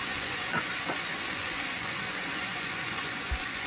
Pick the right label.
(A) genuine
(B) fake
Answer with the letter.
B